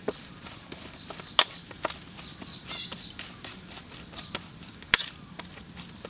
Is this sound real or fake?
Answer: real